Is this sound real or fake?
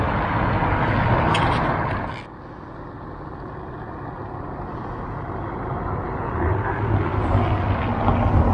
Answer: real